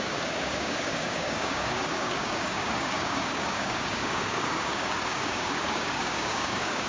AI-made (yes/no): yes